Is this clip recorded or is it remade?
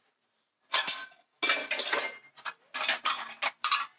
recorded